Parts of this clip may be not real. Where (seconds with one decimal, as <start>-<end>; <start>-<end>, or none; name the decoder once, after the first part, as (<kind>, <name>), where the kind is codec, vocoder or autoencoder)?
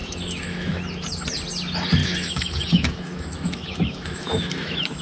0.0-0.8 (autoencoder, DAC-VAE); 2.0-5.0